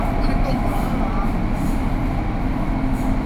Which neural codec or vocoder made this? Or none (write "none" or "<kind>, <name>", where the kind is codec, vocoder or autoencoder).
none